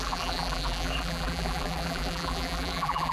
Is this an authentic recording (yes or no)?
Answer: no